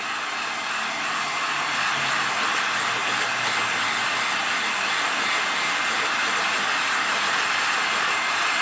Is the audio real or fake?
real